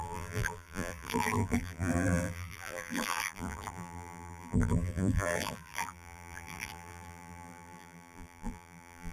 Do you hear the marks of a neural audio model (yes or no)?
yes